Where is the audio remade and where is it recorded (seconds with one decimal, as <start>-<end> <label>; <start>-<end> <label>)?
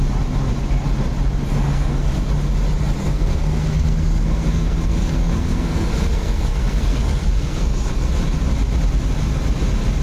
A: 0.0-1.5 recorded; 1.5-2.3 remade; 2.3-3.0 recorded; 3.0-8.1 remade; 8.1-10.0 recorded